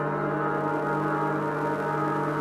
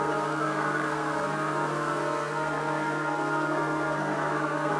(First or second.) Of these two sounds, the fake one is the second